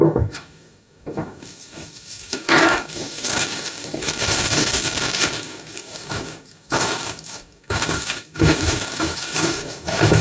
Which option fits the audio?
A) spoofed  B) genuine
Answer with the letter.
A